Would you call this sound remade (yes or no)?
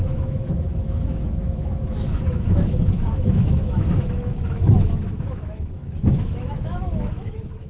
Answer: yes